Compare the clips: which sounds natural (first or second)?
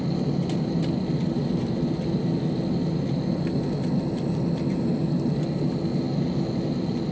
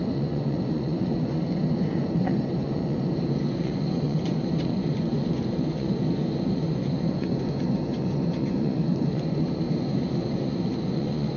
first